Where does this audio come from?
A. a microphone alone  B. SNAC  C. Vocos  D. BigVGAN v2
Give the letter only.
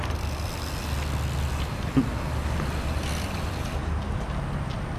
A